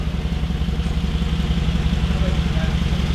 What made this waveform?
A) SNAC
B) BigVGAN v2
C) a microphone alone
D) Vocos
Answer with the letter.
C